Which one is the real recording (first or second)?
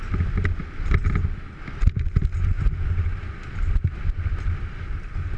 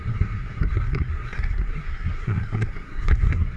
first